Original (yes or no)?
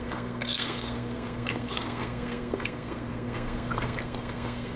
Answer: no